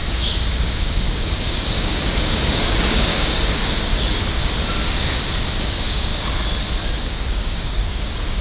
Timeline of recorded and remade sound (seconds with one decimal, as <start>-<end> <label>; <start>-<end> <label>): 0.0-4.4 remade; 4.4-5.6 recorded; 5.6-6.1 remade; 6.1-7.0 recorded; 7.0-8.4 remade